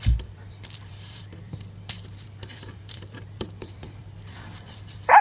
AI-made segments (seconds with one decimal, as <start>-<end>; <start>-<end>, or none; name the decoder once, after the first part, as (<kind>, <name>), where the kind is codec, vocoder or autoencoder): 0.0-5.2 (vocoder, BigVGAN v2)